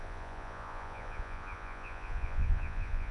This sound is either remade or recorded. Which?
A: remade